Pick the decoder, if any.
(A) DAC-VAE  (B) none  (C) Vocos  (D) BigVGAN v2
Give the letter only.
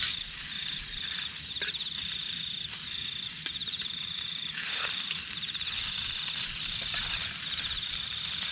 D